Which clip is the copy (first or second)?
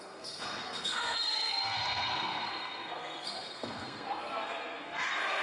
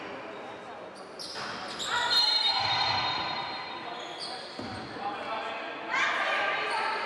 first